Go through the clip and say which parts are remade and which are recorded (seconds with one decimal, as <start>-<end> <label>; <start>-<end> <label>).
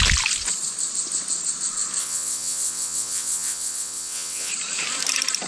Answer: 0.0-2.0 recorded; 2.0-4.5 remade; 4.5-5.5 recorded